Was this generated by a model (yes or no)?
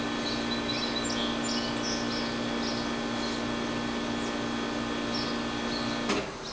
no